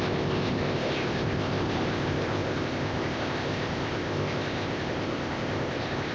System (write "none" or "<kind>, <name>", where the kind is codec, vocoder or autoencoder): codec, ZipCodec